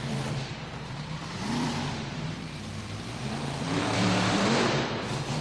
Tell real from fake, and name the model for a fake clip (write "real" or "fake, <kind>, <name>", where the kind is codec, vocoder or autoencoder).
fake, vocoder, BigVGAN v2